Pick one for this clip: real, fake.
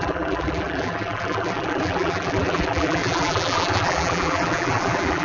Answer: fake